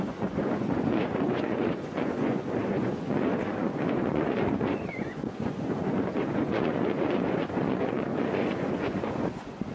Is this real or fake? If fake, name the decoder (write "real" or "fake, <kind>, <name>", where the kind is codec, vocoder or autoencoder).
fake, vocoder, Vocos